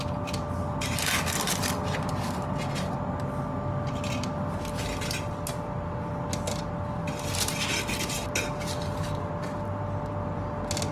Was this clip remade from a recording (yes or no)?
no